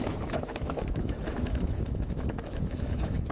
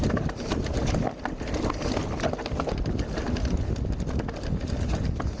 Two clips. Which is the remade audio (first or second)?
first